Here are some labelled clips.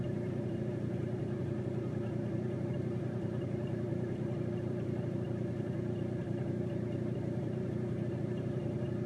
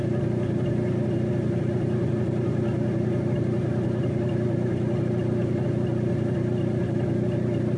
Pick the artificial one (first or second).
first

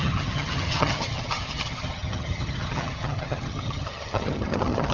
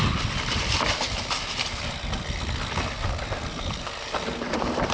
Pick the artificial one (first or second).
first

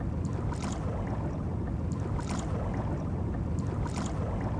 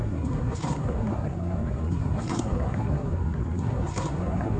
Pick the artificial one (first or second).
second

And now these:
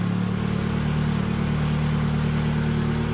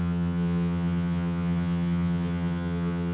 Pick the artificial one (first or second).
second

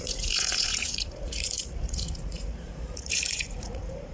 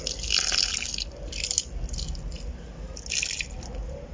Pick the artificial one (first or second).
first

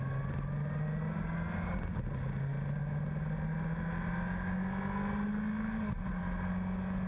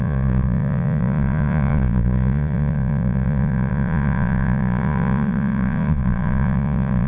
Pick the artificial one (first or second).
second